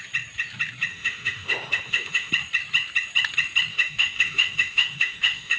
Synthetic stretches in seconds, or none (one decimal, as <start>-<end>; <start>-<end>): 0.9-2.3; 3.7-5.6